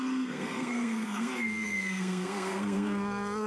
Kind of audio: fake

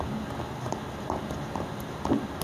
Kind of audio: real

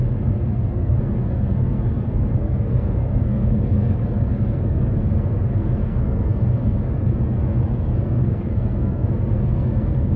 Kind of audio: fake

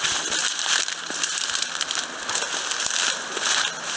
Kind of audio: real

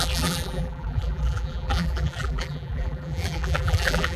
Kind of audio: fake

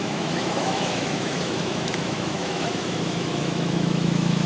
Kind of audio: fake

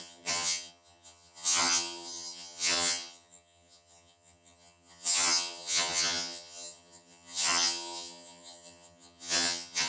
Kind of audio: fake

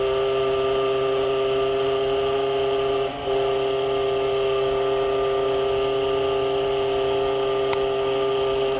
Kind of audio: real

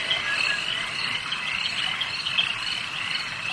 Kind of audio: real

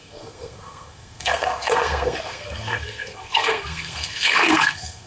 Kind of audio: fake